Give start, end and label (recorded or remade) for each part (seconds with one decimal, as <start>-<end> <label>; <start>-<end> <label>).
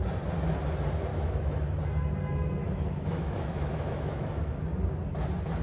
0.0-1.1 recorded; 1.1-1.8 remade; 1.8-2.6 recorded; 2.6-4.6 remade; 4.6-5.6 recorded